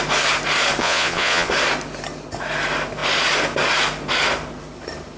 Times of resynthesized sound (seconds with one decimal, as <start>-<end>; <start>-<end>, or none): 0.8-1.5